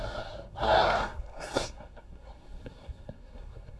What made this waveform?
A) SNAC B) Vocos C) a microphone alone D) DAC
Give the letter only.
A